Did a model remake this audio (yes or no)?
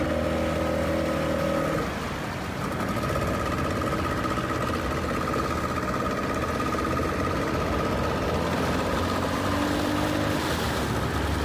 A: no